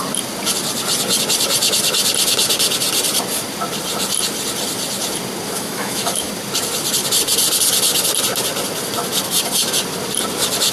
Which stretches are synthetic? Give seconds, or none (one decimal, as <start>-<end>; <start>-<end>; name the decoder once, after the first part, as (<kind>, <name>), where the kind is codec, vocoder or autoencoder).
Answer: 5.6-6.3 (autoencoder, DAC-VAE)